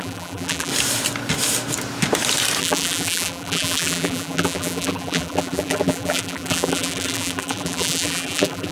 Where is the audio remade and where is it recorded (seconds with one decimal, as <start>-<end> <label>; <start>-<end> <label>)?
0.0-0.7 remade; 0.7-2.6 recorded; 2.6-8.7 remade